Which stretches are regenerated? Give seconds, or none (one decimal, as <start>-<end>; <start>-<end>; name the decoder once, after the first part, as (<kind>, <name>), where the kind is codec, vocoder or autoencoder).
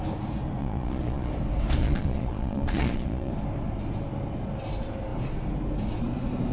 0.6-1.3 (vocoder, Vocos); 1.8-3.3